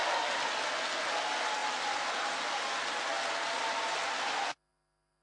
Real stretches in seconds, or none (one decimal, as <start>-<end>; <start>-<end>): 0.0-5.2